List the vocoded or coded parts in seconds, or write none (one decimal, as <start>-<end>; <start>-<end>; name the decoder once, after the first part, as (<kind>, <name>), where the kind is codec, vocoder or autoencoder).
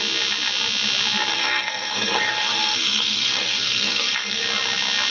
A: 1.3-4.4 (codec, SNAC)